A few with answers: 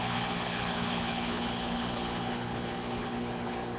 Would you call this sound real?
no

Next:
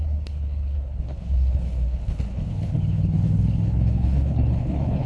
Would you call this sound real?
no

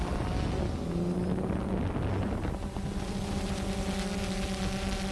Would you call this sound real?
yes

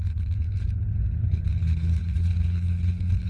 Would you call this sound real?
no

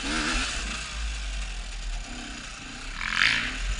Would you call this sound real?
yes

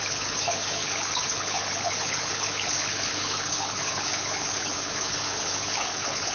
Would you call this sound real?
no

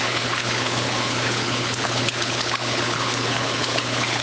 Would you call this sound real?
no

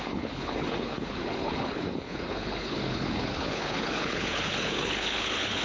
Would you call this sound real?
no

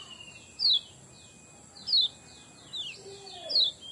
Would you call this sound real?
yes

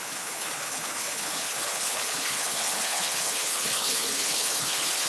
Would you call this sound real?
no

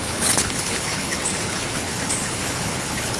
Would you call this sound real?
no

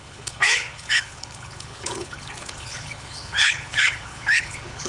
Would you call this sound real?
no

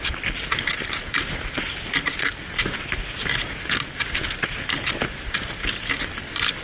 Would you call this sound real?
yes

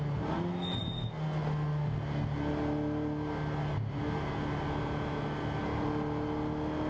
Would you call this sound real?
yes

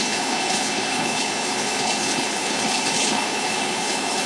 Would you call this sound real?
no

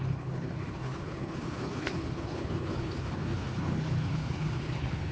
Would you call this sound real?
no